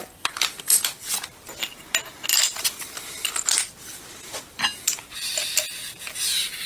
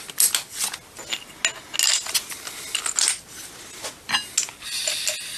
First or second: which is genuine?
second